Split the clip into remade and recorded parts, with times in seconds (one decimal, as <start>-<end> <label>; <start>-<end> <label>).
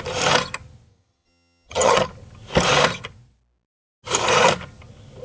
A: 0.0-0.9 recorded; 0.9-2.1 remade; 2.1-5.2 recorded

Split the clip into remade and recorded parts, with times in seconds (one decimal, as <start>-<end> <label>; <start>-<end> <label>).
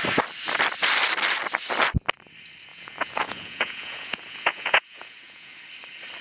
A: 0.0-2.7 recorded; 2.7-5.5 remade; 5.5-6.2 recorded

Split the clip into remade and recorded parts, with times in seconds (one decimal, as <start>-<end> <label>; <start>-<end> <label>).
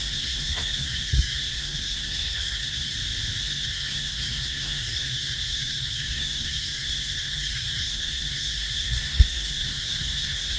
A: 0.0-2.9 remade; 2.9-3.4 recorded; 3.4-10.6 remade